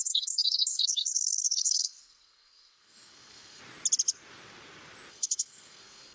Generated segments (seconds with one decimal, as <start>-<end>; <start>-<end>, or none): 0.0-3.6; 5.1-6.1